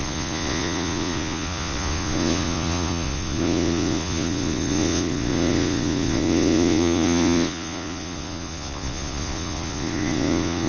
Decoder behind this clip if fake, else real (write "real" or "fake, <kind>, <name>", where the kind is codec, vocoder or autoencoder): fake, vocoder, Vocos